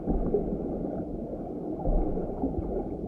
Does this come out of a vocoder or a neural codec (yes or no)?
no